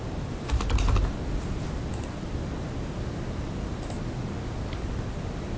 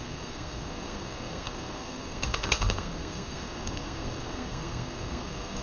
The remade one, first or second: second